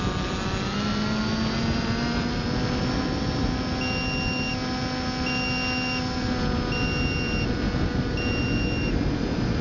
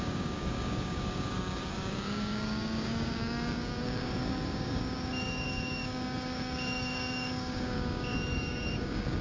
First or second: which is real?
first